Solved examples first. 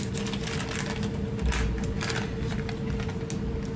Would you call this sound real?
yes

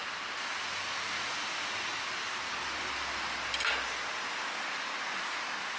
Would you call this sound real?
yes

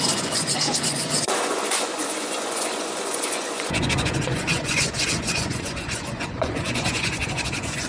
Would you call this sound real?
no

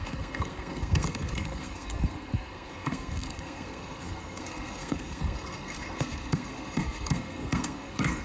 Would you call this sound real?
no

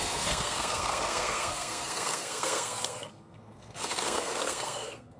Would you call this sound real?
no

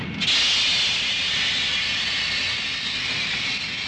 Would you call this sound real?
yes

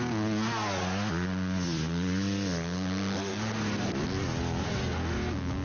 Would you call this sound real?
yes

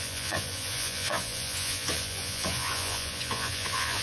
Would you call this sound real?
no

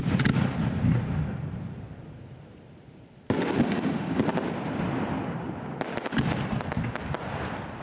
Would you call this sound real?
yes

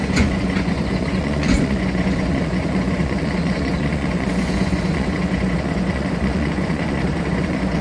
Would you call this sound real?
no